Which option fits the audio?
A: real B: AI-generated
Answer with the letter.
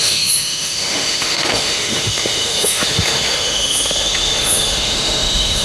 B